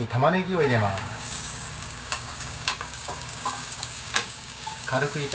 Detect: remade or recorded remade